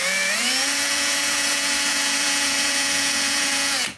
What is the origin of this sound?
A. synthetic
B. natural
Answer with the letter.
A